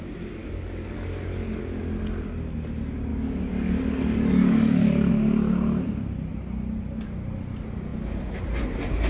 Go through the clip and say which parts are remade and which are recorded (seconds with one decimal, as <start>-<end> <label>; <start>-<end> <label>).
0.0-0.4 recorded; 0.4-1.6 remade; 1.6-3.1 recorded; 3.1-5.1 remade; 5.1-9.1 recorded